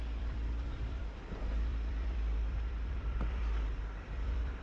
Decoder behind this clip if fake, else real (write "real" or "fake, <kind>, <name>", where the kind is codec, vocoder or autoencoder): fake, vocoder, BigVGAN v2